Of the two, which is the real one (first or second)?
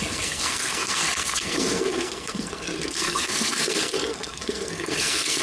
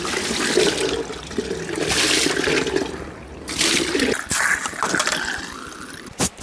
second